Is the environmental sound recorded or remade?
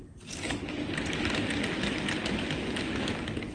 recorded